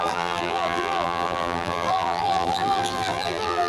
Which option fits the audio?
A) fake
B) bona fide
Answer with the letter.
A